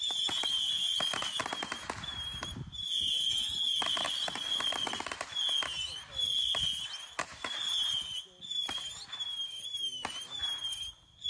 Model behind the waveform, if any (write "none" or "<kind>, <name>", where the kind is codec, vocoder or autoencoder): none